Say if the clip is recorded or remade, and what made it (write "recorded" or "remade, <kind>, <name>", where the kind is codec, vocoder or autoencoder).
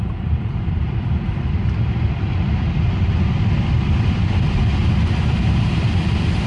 remade, vocoder, BigVGAN v2